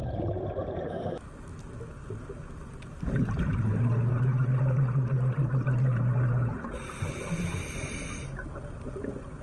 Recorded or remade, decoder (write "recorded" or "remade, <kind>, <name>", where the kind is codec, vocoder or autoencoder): recorded